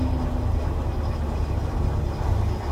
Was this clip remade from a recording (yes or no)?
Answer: no